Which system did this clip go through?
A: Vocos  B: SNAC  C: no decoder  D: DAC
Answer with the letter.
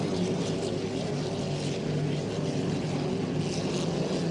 C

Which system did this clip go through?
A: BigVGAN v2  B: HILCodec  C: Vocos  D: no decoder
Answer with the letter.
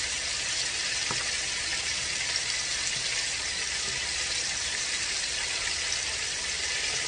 D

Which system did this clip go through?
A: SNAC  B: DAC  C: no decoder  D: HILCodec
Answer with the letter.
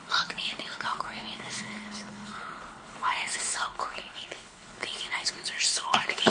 D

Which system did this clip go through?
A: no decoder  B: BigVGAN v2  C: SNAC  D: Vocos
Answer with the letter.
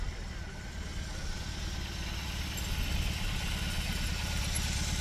A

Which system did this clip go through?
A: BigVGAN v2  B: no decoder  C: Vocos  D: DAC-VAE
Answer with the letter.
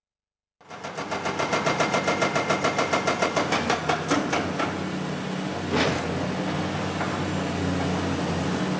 B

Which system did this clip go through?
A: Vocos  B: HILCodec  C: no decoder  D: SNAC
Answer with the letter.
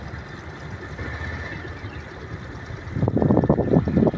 C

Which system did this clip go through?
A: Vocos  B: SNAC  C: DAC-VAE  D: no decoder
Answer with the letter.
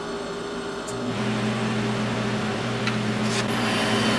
D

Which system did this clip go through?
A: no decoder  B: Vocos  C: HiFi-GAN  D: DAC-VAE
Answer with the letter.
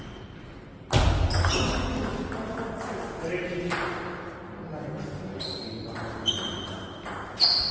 A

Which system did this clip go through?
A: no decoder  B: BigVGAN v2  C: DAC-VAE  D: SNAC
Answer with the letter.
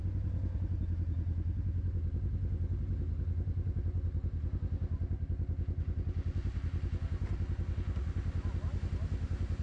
A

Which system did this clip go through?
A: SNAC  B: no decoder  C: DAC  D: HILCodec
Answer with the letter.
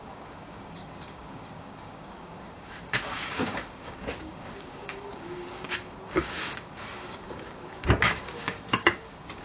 C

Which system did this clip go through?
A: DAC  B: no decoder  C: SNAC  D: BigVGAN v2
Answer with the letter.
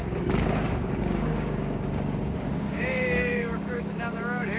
A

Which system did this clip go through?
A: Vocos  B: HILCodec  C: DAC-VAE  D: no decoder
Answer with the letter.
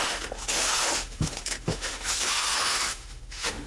C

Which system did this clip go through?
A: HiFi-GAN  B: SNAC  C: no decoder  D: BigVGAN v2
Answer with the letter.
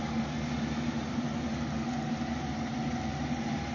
C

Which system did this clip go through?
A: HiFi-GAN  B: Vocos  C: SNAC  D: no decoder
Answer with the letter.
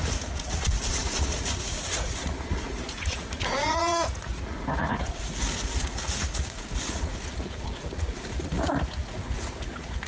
B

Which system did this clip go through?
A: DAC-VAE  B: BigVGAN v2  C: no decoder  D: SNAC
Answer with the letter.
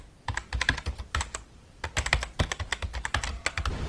C